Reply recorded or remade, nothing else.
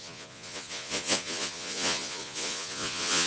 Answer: remade